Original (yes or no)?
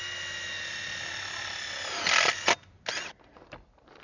yes